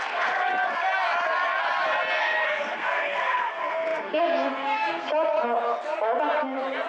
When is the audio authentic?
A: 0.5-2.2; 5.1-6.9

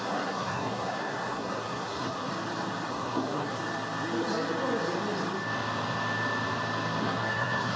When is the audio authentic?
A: 2.3-2.9; 3.6-7.0

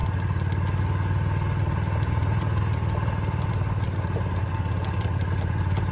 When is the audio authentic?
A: 0.0-5.9